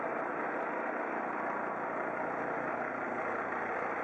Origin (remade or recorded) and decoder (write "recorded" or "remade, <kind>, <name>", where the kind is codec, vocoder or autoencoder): recorded